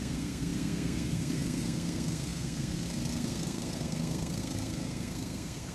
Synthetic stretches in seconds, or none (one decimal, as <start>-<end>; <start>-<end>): 0.0-5.7